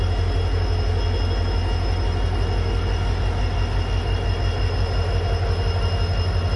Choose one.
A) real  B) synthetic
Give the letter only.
A